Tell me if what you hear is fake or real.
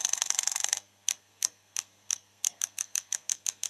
fake